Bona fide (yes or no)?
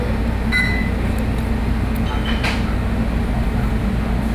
yes